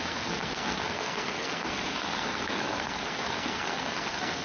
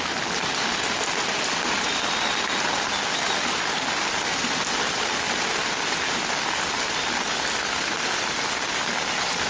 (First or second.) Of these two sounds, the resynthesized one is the first